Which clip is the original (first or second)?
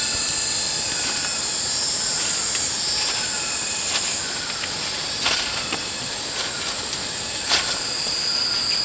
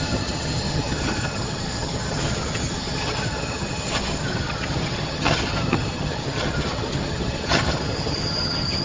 first